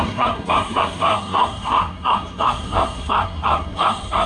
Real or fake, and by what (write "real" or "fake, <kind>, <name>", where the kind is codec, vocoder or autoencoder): fake, codec, SNAC